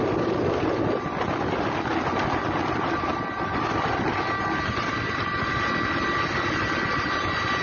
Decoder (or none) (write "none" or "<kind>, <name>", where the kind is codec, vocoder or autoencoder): none